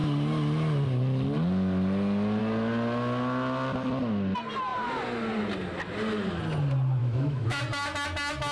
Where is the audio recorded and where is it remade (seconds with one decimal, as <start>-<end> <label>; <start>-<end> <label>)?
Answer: 0.0-7.0 recorded; 7.0-7.6 remade; 7.6-8.5 recorded